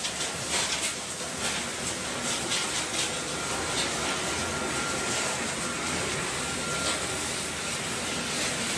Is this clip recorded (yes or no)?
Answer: yes